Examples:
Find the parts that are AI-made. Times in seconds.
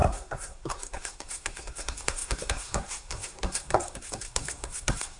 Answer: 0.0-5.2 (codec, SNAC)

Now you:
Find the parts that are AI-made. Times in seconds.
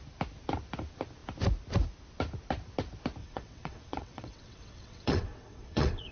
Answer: 3.2-6.1 (vocoder, WaveNeXt)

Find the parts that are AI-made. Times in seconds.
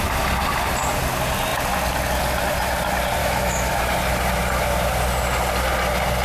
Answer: 3.2-3.8 (autoencoder, DAC-VAE)